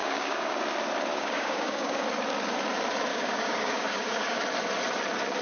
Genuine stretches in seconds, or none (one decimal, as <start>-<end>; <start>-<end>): 0.6-1.1; 2.0-3.1; 4.4-5.4